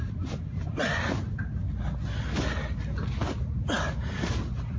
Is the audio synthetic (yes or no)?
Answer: no